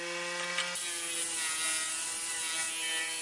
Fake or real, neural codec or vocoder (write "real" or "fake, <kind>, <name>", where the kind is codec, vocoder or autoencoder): real